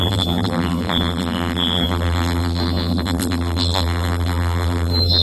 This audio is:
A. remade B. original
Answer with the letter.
A